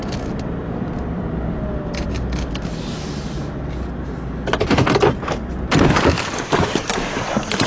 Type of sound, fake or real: real